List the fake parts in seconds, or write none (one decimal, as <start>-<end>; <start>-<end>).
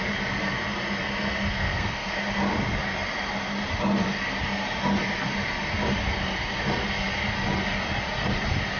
1.5-2.1